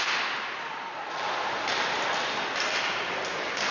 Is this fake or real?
real